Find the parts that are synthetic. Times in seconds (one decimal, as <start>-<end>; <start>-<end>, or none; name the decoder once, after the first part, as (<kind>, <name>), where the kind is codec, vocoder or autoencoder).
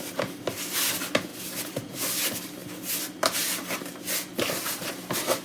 1.3-1.9 (vocoder, BigVGAN v2); 4.3-4.9